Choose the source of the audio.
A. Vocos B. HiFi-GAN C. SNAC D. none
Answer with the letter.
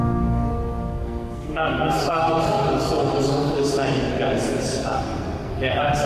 C